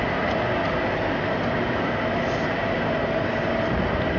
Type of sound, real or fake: real